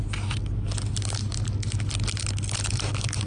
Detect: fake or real real